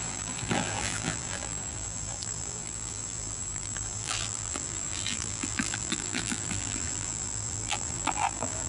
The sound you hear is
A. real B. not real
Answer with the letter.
B